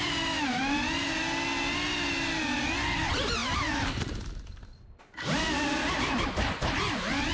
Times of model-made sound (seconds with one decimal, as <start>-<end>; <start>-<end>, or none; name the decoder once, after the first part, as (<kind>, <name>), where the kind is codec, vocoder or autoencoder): none